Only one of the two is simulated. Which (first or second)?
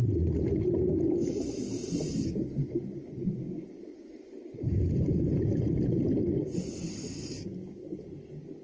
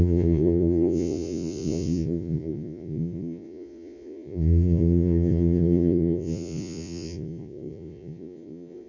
second